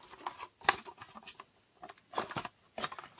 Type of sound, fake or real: real